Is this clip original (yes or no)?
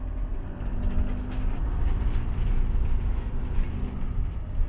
yes